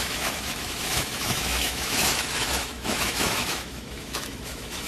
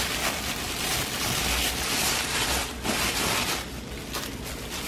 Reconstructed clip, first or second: first